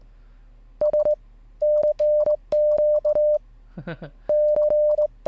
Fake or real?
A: real